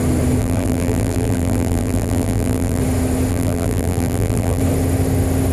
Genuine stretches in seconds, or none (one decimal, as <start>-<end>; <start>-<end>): 0.0-0.4; 2.8-3.3; 4.6-5.5